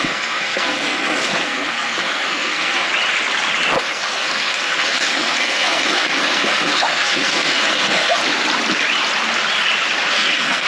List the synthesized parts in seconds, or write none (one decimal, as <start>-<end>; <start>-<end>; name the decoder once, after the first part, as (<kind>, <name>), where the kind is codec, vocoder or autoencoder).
0.0-2.9 (codec, SNAC); 3.8-8.2; 10.1-10.7